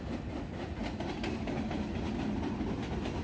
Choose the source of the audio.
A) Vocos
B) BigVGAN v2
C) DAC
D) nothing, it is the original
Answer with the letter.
D